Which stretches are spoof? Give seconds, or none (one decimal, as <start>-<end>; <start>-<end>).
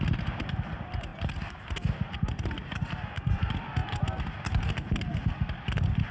none